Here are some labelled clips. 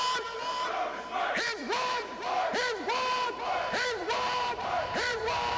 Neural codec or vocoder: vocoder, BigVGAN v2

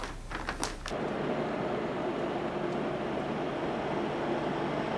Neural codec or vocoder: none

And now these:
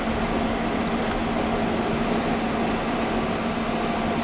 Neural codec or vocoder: none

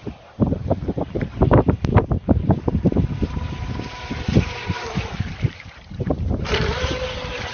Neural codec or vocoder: vocoder, BigVGAN v2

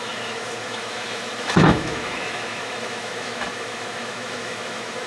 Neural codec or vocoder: autoencoder, DAC-VAE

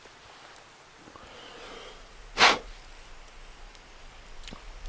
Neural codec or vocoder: none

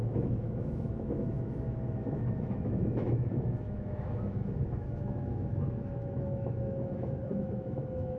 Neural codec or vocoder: autoencoder, DAC-VAE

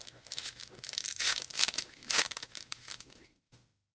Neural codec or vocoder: autoencoder, DAC-VAE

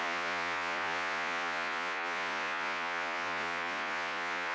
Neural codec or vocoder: vocoder, Vocos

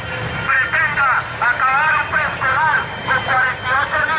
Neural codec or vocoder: none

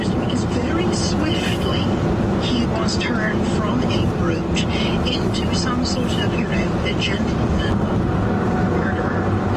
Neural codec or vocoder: none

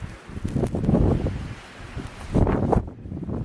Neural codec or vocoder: none